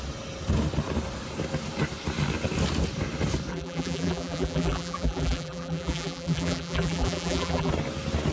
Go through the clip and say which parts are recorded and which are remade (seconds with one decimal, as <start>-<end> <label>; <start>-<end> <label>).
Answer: 0.0-3.5 recorded; 3.5-7.7 remade; 7.7-8.3 recorded